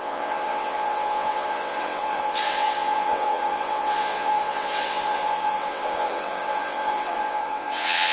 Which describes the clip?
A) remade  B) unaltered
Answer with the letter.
A